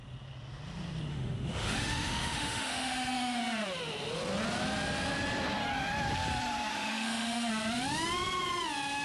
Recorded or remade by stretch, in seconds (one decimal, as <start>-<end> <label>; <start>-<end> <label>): 0.0-1.1 recorded; 1.1-3.4 remade; 3.4-6.7 recorded; 6.7-7.5 remade; 7.5-9.0 recorded

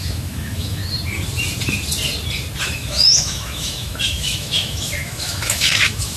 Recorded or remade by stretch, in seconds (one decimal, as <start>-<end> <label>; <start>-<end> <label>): 0.0-0.8 remade; 0.8-2.6 recorded; 2.6-6.2 remade

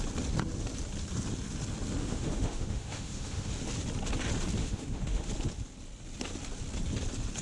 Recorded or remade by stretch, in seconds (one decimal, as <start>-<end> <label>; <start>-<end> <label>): 0.0-2.0 recorded; 2.0-3.5 remade; 3.5-4.6 recorded; 4.6-5.3 remade; 5.3-7.4 recorded

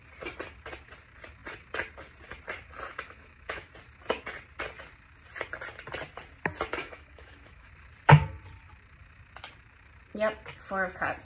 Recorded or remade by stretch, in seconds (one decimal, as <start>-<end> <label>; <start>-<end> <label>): 0.0-2.9 recorded; 2.9-3.7 remade; 3.7-6.8 recorded; 6.8-7.7 remade; 7.7-11.2 recorded

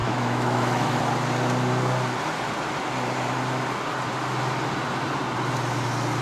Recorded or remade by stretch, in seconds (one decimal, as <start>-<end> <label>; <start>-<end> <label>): 0.0-1.0 remade; 1.0-6.2 recorded

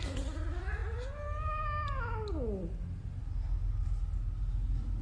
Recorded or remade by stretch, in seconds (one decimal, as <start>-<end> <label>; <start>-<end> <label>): 0.0-5.0 recorded

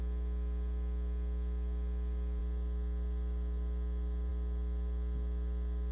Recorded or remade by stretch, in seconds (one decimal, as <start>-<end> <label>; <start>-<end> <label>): 0.0-5.9 recorded

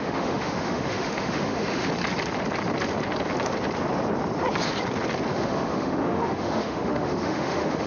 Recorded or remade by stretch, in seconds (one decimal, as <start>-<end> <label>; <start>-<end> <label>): 0.0-1.9 remade; 1.9-5.3 recorded; 5.3-7.9 remade